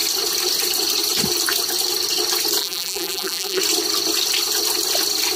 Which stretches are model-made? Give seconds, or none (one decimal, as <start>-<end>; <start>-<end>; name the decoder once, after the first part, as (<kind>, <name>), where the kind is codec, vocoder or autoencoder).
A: 2.6-3.6 (vocoder, BigVGAN v2)